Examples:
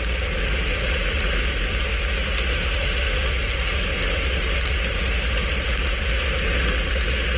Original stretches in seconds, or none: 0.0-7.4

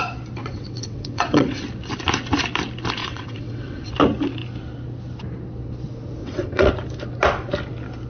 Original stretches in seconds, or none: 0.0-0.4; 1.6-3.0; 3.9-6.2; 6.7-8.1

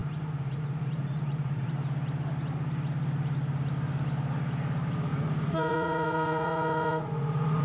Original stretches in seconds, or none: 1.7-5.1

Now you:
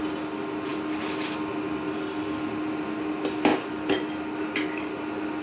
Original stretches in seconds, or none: 0.0-5.4

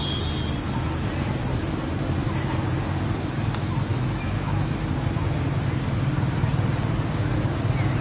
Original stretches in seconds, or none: 0.0-3.9; 4.7-8.0

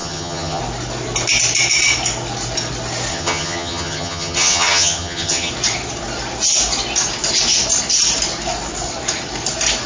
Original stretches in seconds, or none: 0.6-3.1; 5.5-9.9

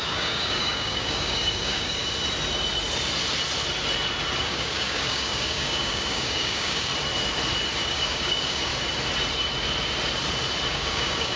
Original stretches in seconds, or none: 2.0-4.4; 6.9-7.8; 8.7-10.7

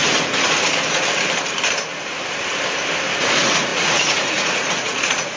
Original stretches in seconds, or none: 0.0-3.2